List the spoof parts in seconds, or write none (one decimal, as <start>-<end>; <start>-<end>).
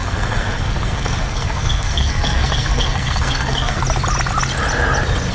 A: 0.0-3.8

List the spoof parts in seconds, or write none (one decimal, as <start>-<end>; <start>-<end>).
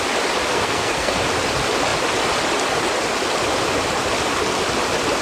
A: 0.5-1.1